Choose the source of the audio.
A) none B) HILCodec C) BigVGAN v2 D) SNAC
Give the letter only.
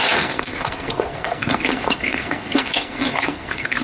D